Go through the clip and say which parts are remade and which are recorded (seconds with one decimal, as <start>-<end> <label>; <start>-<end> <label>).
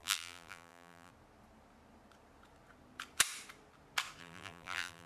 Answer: 0.0-1.1 remade; 1.1-4.2 recorded; 4.2-5.1 remade